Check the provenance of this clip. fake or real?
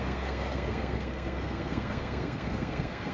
fake